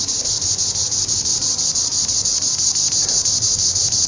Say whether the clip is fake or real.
real